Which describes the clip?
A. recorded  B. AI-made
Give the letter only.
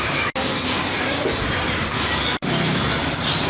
A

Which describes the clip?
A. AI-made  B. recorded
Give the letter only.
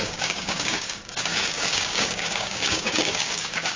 A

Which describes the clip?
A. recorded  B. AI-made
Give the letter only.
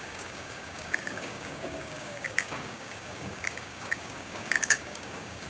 B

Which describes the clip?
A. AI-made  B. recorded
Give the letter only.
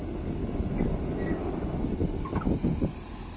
B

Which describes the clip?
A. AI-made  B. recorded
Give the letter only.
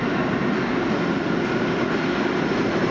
B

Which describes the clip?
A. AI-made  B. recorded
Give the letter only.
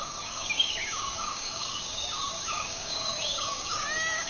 A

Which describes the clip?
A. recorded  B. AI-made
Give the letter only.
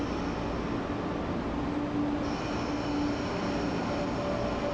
A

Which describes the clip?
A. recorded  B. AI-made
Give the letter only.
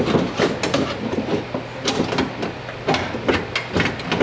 A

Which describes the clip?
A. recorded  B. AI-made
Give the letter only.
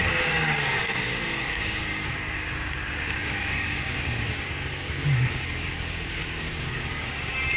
B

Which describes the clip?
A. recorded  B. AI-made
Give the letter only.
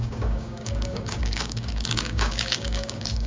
B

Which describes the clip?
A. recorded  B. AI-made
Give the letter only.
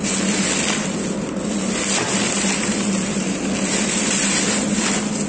A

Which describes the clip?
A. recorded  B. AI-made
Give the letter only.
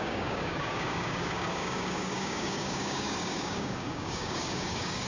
B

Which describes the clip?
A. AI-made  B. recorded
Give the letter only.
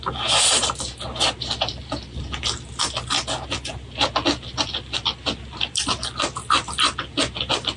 B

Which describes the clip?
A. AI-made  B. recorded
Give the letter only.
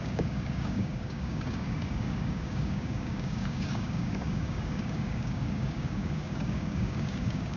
A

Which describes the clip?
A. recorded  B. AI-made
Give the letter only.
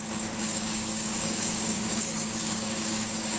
B